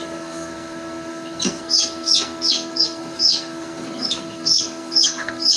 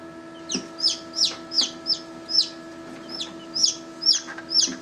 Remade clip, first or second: first